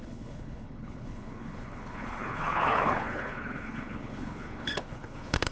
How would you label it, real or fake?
fake